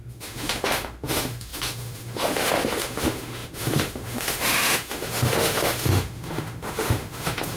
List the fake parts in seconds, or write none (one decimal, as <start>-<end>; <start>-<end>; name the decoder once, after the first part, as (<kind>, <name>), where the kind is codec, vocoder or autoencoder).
0.0-7.6 (autoencoder, DAC-VAE)